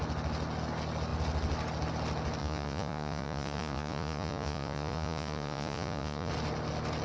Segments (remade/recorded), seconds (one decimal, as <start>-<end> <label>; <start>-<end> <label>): 0.0-2.4 recorded; 2.4-6.3 remade; 6.3-7.0 recorded